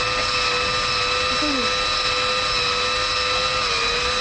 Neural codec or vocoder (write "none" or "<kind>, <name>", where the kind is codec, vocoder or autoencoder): none